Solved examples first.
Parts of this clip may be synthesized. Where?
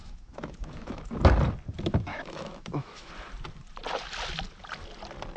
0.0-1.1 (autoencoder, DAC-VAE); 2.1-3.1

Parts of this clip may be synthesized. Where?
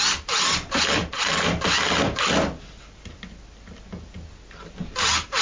none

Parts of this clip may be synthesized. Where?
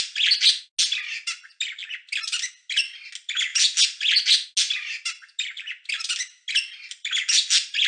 none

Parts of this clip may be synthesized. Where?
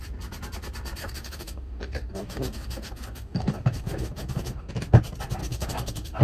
1.0-4.7 (codec, DAC); 5.4-6.2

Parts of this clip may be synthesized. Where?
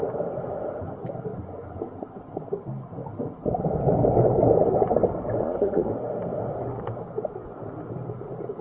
5.4-5.9 (codec, SNAC)